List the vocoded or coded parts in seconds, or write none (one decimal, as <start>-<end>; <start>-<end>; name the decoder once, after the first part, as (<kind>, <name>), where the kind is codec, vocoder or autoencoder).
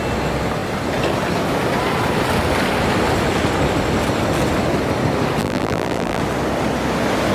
5.4-6.2 (vocoder, BigVGAN v2)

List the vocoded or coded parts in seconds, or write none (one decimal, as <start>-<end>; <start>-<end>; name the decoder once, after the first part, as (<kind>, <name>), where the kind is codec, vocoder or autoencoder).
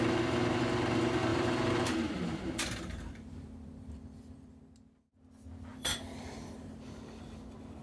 1.3-4.6 (vocoder, BigVGAN v2); 5.7-6.7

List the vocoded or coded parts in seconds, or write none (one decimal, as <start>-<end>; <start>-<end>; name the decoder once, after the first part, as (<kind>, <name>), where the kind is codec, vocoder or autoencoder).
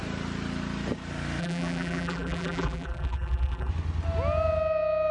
1.4-3.7 (vocoder, BigVGAN v2)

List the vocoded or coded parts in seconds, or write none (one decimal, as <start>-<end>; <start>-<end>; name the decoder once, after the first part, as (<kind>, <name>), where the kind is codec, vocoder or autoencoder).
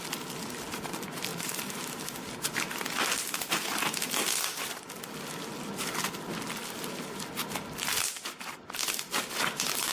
1.3-1.9 (vocoder, BigVGAN v2)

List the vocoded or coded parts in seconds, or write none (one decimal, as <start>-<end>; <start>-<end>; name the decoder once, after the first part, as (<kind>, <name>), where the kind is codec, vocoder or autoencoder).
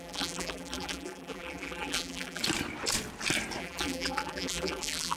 0.0-2.4 (vocoder, BigVGAN v2); 3.6-5.2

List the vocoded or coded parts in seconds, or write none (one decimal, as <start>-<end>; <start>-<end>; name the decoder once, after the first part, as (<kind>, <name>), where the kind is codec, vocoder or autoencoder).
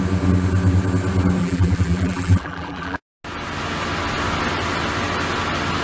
1.4-3.0 (vocoder, BigVGAN v2)